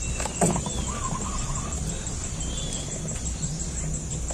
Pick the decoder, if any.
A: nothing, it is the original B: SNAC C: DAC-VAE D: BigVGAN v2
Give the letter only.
A